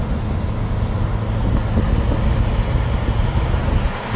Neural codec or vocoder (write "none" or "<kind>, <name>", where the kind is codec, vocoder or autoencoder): none